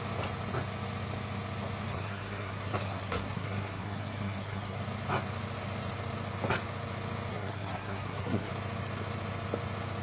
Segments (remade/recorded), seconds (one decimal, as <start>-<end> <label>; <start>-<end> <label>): 0.0-1.9 recorded; 1.9-4.8 remade; 4.8-7.3 recorded; 7.3-8.5 remade; 8.5-10.0 recorded